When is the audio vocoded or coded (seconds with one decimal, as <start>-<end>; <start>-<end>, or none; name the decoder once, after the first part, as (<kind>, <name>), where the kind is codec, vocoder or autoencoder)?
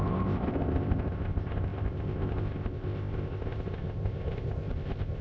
0.0-5.2 (codec, ZipCodec)